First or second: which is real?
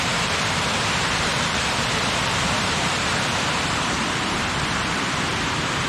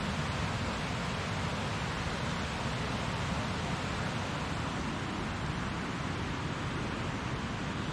second